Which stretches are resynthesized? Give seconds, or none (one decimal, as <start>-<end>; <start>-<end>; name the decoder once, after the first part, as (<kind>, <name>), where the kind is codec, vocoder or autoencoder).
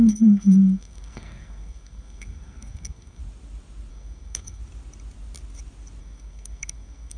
0.0-3.2 (codec, SNAC); 3.9-4.6; 6.0-7.2